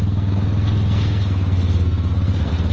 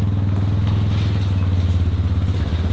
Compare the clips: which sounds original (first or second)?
second